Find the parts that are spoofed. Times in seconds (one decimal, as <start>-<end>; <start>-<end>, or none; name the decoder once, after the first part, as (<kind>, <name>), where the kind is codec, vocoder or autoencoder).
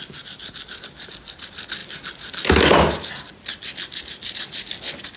none